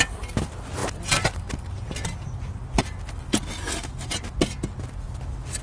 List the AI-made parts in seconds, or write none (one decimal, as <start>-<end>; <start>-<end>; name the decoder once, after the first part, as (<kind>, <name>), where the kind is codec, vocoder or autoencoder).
none